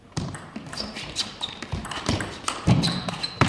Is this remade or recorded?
remade